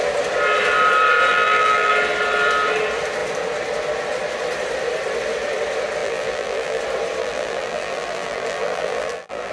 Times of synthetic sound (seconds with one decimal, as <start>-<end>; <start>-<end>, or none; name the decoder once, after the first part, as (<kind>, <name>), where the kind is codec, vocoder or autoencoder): 1.3-1.9 (vocoder, BigVGAN v2); 6.0-6.8; 7.2-9.5